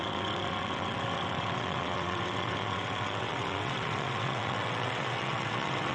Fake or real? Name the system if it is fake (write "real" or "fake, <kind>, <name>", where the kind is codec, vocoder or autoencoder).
fake, vocoder, WaveNeXt